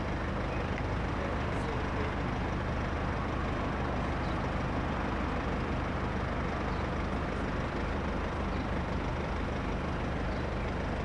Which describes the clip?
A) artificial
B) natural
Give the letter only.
B